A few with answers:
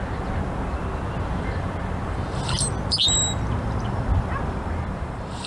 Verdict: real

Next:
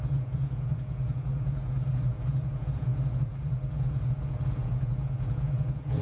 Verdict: fake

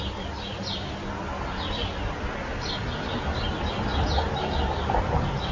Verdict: real